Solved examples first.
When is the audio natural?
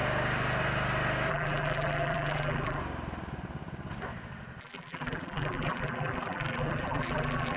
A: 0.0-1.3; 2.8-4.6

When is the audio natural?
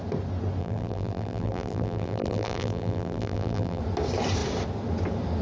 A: 0.0-0.6; 3.8-5.4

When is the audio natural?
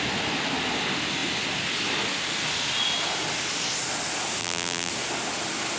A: 0.0-4.4; 4.9-5.8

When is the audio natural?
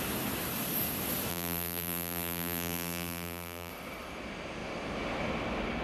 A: 0.0-1.3; 3.7-5.8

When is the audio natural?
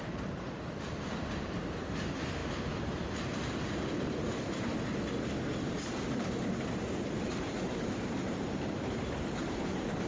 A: 4.7-5.6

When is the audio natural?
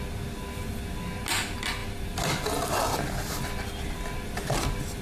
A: 0.0-1.8